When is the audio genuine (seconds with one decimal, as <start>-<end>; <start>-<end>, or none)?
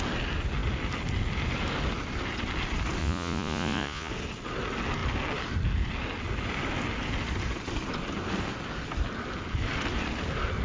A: 0.0-3.0; 4.1-10.6